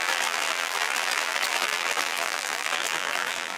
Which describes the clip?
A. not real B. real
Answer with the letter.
A